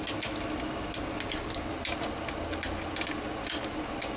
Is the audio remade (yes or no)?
no